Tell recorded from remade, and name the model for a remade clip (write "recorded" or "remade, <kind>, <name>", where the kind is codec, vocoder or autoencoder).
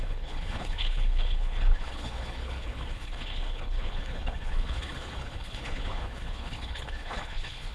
remade, codec, HILCodec